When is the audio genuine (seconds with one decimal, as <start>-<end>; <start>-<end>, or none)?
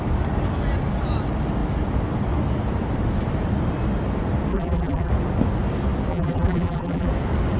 0.0-4.5; 5.1-6.1; 7.1-7.6